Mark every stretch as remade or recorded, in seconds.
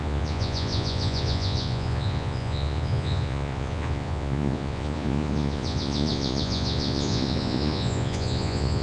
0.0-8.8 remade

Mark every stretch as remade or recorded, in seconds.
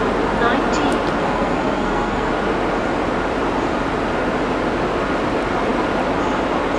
0.0-1.2 recorded; 1.2-2.3 remade; 2.3-6.8 recorded